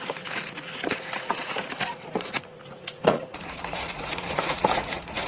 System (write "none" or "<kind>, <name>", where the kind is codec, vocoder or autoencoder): vocoder, Vocos